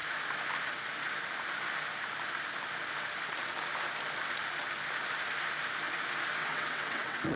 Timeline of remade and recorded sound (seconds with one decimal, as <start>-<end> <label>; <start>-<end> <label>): 0.0-6.4 recorded; 6.4-7.4 remade